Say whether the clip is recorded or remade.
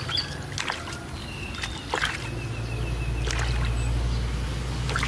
recorded